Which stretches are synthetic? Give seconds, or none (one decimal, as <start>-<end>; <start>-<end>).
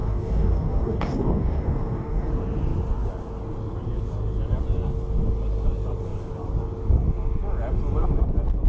0.0-2.3